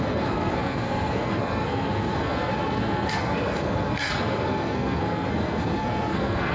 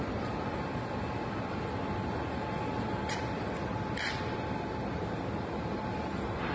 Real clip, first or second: second